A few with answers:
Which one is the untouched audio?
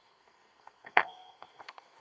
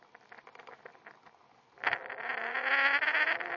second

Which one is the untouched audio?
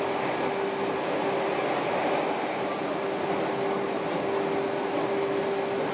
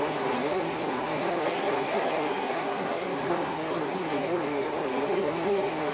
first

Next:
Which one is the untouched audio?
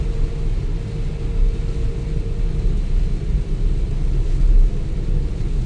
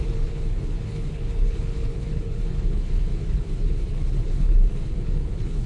first